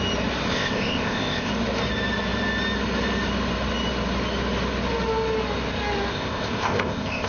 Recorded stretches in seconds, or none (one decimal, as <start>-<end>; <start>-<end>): 0.0-0.5; 1.5-6.1